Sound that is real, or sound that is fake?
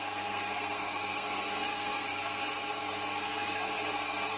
fake